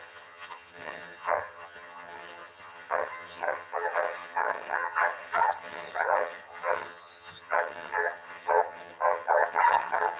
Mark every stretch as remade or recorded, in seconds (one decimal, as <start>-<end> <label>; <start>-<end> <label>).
0.0-10.2 remade